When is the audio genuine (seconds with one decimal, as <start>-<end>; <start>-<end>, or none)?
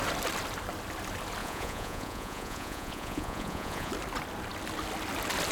0.0-1.4; 3.9-5.5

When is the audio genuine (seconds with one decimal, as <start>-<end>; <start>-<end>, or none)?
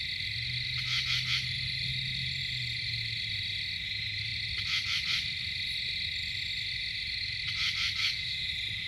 0.0-8.0; 8.5-8.9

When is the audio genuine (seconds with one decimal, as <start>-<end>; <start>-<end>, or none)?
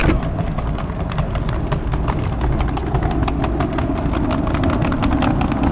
0.0-5.7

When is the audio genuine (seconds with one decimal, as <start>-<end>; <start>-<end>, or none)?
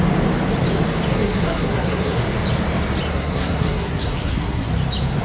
0.0-1.1; 2.2-3.1; 4.7-5.2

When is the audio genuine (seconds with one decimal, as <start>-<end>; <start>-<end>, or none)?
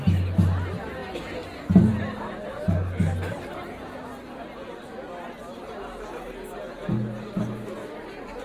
0.0-8.4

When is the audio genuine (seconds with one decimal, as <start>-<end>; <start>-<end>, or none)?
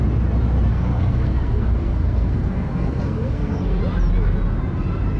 0.0-0.7; 3.8-5.2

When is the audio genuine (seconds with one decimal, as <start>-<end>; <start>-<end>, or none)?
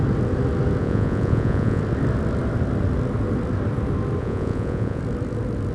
0.0-0.8; 1.8-4.2; 5.0-5.7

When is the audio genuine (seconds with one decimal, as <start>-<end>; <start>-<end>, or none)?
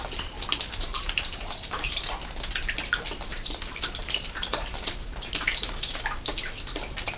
0.0-0.9; 1.9-3.3; 6.5-7.2